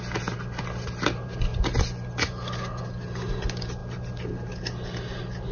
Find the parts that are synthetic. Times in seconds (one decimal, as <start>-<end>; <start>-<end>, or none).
none